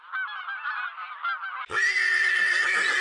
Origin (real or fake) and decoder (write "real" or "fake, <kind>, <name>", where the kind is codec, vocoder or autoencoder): real